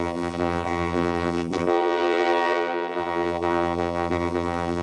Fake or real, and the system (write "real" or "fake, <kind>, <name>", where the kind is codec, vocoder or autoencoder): fake, vocoder, BigVGAN v2